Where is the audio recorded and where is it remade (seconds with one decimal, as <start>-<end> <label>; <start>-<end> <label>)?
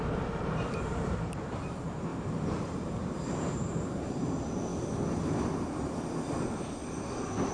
0.0-4.7 remade; 4.7-7.5 recorded